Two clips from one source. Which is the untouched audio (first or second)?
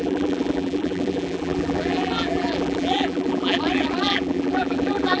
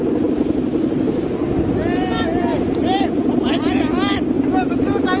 second